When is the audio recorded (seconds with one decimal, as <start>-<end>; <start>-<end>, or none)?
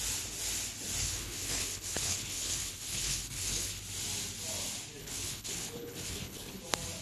0.0-1.0; 3.8-5.0; 6.6-7.0